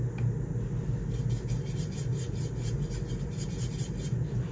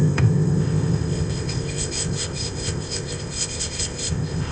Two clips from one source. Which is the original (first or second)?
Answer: first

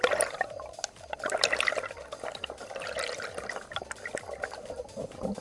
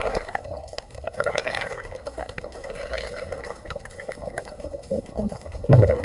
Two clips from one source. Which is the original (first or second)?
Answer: first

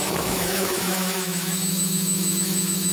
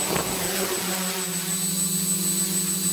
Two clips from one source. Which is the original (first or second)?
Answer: second